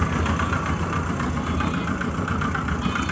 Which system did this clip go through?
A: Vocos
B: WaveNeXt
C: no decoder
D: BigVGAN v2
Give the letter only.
C